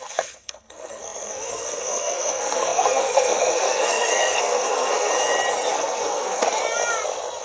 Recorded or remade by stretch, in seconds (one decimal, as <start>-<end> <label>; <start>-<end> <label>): 0.0-5.1 remade; 5.1-5.7 recorded; 5.7-6.4 remade; 6.4-7.4 recorded